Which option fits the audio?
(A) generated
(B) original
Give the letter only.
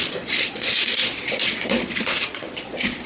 A